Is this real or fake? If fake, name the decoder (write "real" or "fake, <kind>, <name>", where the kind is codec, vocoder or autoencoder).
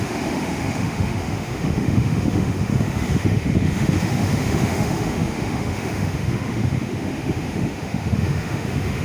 fake, autoencoder, DAC-VAE